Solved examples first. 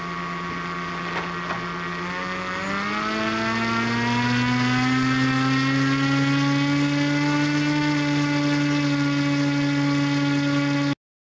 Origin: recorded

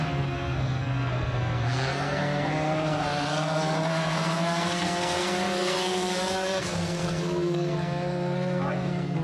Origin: remade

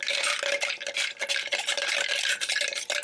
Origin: recorded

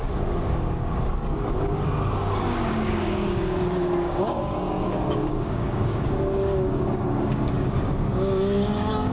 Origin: remade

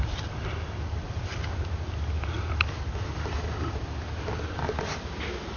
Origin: recorded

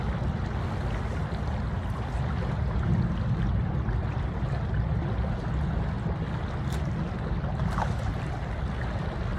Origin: recorded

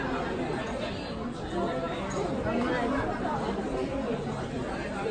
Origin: recorded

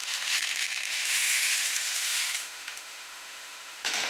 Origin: remade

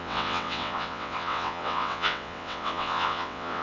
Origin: remade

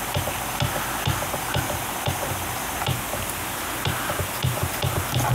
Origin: recorded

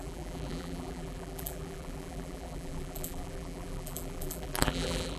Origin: remade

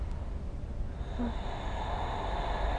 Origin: recorded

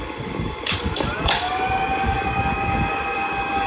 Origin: remade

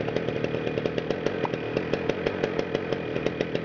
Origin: recorded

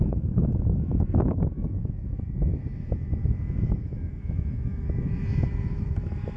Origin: remade